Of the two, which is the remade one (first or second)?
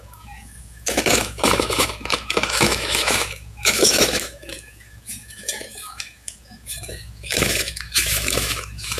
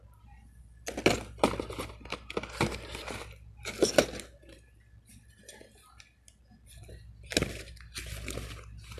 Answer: first